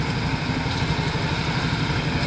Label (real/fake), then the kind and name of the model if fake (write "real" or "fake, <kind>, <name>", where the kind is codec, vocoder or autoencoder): real